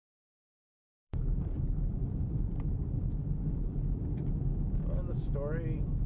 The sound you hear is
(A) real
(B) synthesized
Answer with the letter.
B